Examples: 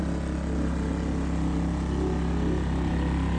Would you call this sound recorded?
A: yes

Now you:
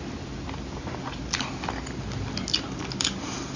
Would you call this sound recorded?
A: yes